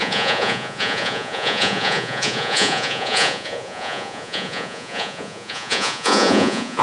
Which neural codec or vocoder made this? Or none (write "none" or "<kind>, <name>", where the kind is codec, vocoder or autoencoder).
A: vocoder, Vocos